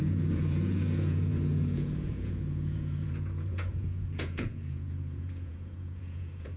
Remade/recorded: remade